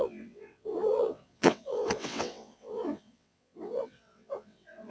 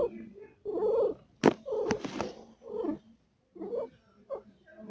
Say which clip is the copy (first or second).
first